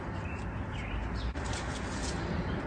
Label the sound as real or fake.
real